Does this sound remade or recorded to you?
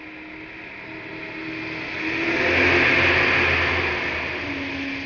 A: recorded